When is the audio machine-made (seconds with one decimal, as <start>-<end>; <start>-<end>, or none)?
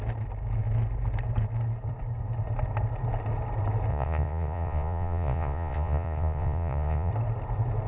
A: 3.9-7.1